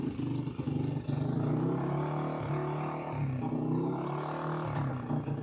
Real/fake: real